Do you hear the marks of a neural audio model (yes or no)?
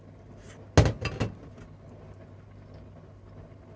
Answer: no